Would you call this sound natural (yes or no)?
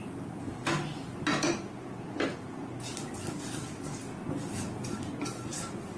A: yes